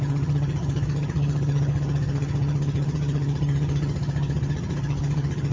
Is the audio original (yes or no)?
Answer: no